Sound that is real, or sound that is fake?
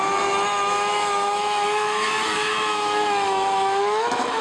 fake